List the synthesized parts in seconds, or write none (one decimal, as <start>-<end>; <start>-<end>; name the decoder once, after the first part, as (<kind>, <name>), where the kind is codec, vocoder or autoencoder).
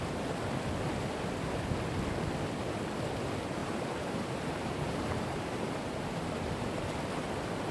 3.6-5.6 (vocoder, BigVGAN v2)